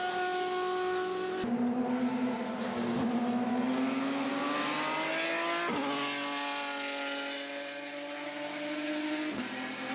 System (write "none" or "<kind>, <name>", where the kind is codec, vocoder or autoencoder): none